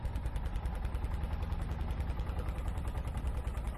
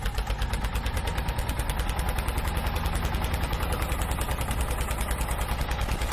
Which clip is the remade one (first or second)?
first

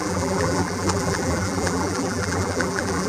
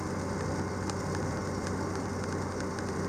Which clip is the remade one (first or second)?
first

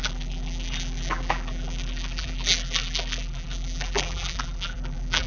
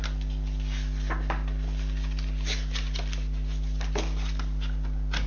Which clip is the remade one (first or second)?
first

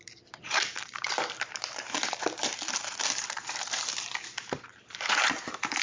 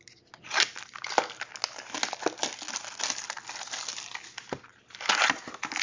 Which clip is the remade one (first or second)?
first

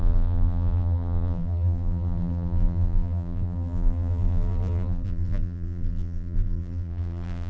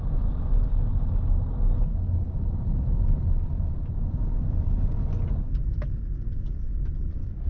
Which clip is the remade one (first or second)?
first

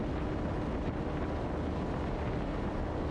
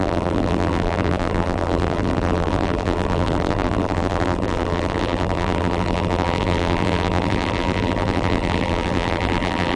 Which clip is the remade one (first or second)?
second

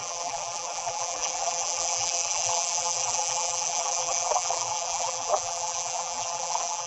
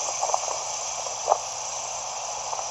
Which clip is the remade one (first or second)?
first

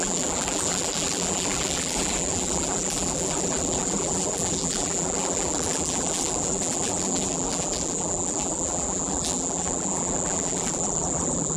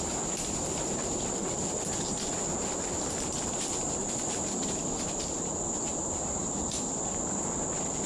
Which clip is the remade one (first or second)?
first